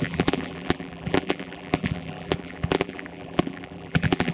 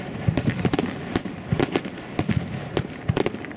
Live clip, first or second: second